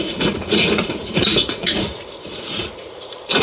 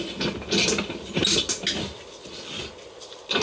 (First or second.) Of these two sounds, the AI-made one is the first